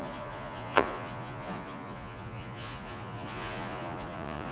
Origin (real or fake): fake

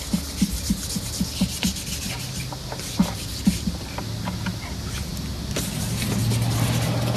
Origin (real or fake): real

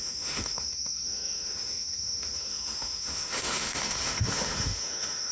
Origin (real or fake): fake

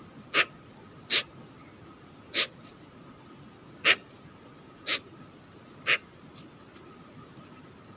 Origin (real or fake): real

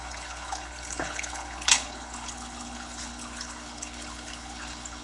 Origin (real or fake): fake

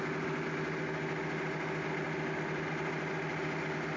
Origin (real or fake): real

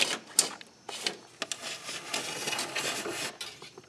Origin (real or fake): real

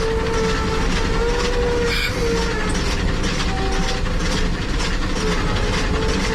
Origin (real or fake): real